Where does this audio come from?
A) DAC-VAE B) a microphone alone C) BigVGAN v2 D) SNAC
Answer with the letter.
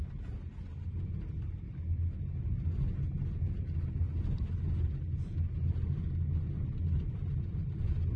B